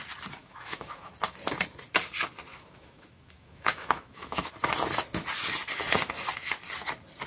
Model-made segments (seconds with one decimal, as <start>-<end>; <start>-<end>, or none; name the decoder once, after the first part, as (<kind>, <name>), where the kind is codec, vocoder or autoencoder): 0.4-1.1 (autoencoder, DAC-VAE); 2.5-4.5